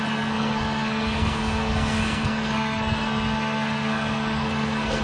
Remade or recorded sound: remade